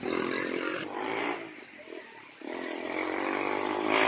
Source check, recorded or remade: recorded